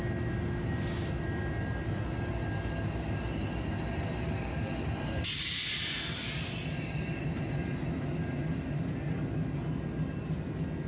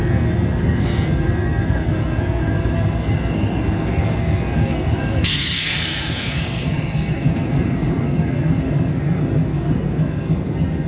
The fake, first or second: second